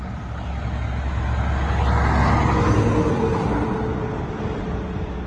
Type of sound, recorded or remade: recorded